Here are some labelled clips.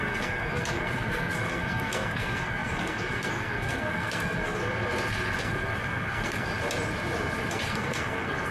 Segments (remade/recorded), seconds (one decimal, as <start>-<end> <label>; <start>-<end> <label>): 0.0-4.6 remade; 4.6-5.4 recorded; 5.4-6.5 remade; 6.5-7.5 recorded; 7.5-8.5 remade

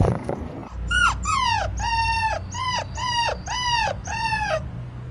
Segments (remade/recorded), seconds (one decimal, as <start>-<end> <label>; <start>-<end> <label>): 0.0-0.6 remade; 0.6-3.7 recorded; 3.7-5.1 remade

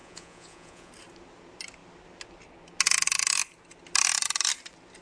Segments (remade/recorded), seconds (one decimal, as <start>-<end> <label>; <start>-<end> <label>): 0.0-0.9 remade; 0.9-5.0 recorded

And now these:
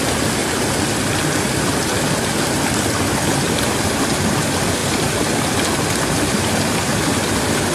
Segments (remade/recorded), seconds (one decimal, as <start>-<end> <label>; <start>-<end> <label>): 0.0-4.8 recorded; 4.8-5.4 remade; 5.4-7.7 recorded

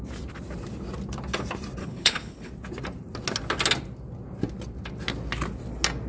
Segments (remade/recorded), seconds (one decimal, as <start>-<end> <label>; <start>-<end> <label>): 0.0-1.8 recorded; 1.8-2.5 remade; 2.5-6.1 recorded